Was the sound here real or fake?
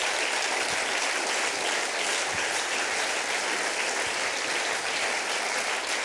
real